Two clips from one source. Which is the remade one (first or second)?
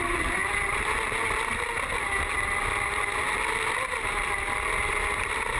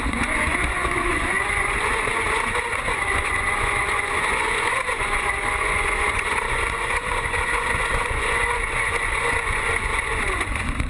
second